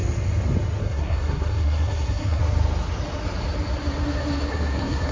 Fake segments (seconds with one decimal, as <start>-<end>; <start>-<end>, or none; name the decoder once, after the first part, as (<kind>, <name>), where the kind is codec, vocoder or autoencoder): 0.8-2.4 (codec, SNAC); 4.5-5.1